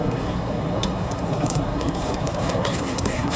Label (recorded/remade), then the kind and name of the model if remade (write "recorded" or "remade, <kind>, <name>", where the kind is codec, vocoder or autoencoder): remade, codec, SNAC